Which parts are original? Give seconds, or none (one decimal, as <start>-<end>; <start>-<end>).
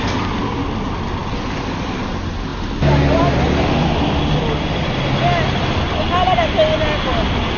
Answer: 0.0-7.6